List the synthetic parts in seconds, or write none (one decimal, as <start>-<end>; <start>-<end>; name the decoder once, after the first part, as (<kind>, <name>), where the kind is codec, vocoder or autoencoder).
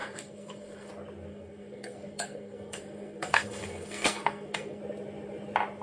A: 0.0-0.9 (codec, SNAC); 1.3-4.8